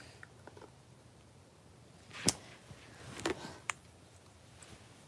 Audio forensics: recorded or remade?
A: recorded